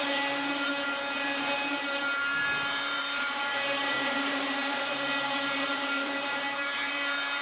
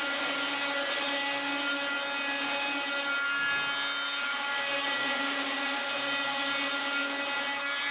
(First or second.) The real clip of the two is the second